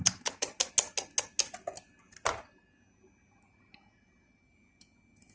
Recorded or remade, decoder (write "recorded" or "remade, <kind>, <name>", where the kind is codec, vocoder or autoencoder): recorded